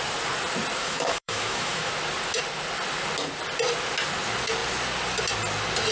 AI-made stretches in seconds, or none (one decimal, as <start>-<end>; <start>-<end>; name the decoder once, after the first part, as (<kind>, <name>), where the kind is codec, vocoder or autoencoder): 0.8-1.9 (autoencoder, DAC-VAE)